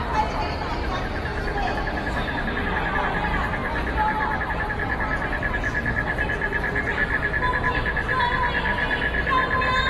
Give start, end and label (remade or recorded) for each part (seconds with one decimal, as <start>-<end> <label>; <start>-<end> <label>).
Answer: 0.0-9.9 recorded